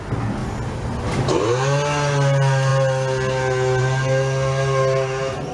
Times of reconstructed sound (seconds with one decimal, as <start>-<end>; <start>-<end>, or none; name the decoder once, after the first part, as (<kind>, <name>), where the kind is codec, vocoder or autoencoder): none